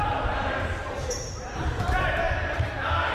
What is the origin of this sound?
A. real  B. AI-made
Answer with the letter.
B